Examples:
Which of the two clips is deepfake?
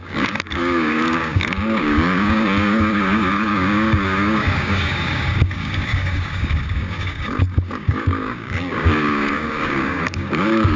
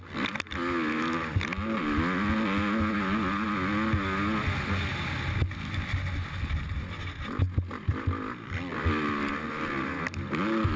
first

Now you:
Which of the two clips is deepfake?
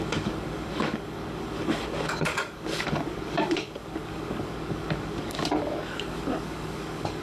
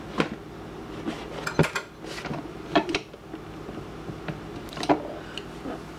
first